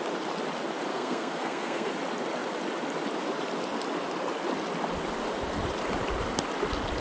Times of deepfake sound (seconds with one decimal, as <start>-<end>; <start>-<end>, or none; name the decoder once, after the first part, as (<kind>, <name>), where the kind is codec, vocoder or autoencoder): 0.9-1.9 (codec, SNAC)